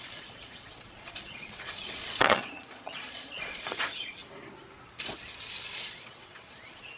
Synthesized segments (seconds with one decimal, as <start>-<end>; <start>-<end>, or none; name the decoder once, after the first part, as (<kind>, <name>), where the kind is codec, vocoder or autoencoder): 0.0-4.2 (vocoder, Vocos); 5.9-7.0